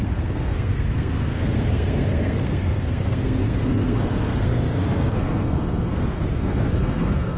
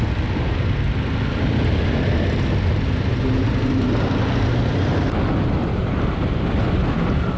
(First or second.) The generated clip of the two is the first